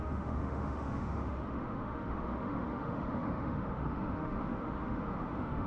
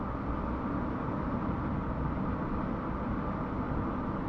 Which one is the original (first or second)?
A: second